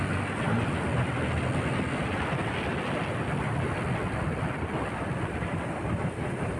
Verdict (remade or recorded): recorded